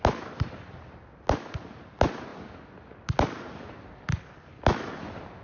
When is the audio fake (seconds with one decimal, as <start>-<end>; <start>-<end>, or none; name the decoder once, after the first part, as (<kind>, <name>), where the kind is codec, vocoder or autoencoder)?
none